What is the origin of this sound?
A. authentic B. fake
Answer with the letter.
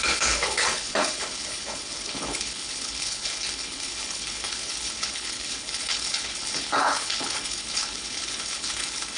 B